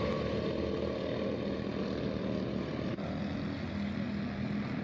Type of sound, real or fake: real